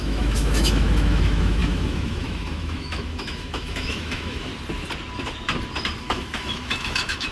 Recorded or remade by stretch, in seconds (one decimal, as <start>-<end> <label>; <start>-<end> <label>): 0.0-4.5 remade; 4.5-6.0 recorded; 6.0-7.3 remade